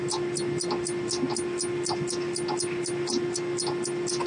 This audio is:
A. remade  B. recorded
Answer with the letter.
B